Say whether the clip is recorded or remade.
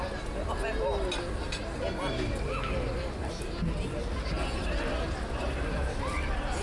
recorded